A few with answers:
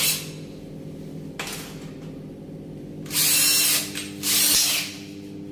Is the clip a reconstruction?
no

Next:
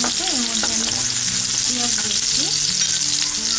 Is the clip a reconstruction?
no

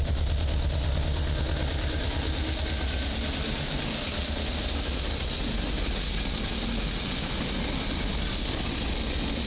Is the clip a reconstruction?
no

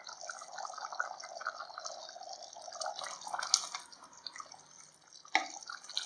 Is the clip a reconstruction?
no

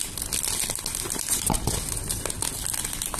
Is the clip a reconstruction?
no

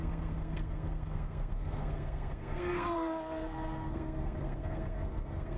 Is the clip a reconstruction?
yes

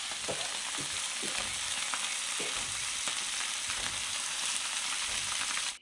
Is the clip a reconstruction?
no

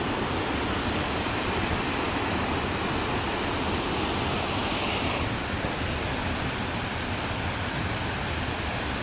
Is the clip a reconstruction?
no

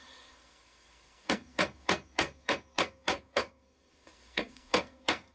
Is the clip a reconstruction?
yes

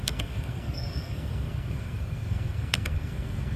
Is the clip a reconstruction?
yes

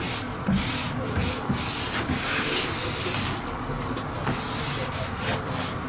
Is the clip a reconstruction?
no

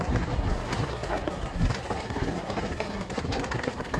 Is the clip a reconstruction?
yes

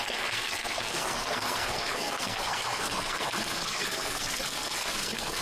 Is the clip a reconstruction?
yes